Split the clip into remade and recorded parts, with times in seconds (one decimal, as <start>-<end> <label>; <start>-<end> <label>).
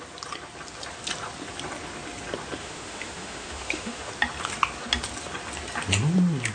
0.0-2.6 recorded; 2.6-4.1 remade; 4.1-6.5 recorded